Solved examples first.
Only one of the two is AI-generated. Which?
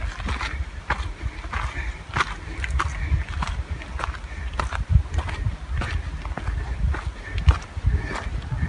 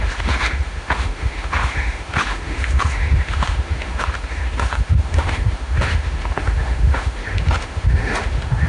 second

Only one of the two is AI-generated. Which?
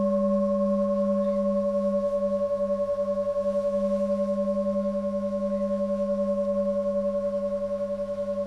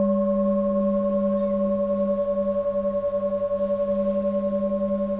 first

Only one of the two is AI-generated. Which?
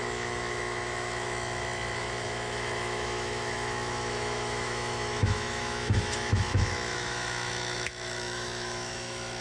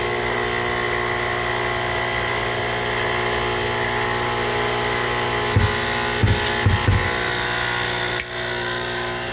first